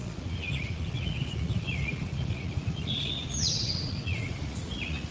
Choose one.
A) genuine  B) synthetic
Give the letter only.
B